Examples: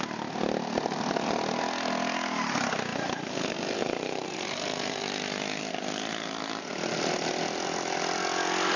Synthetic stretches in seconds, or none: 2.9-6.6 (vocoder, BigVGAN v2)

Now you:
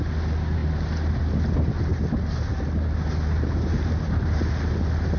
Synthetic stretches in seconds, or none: none